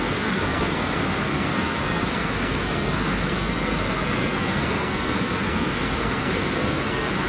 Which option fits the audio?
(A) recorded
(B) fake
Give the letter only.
B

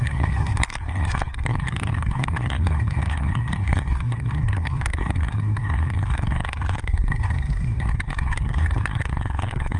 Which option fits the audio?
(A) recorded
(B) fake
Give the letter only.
B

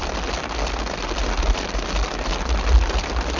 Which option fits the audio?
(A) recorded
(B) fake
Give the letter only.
A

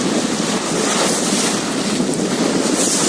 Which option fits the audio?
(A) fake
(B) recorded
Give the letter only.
B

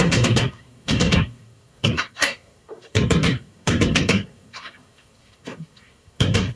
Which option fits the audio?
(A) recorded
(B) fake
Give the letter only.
B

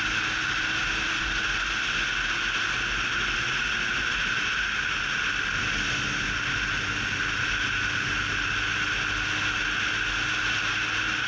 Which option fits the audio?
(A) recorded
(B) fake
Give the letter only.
A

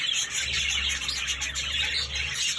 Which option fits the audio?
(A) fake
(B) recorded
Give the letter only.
B